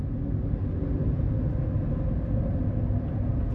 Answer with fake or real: real